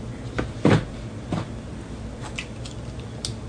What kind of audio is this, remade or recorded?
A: recorded